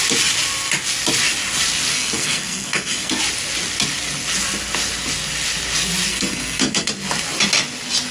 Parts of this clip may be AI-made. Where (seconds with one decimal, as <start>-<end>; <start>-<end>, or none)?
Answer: 1.9-3.2; 6.1-6.9